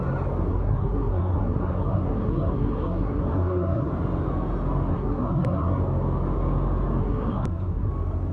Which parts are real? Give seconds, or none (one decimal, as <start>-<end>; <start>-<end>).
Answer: 0.0-0.5; 3.9-4.9; 5.8-7.0; 7.9-8.3